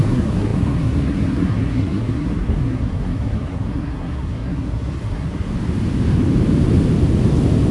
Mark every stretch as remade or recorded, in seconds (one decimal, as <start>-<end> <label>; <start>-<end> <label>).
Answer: 0.0-5.5 remade; 5.5-7.7 recorded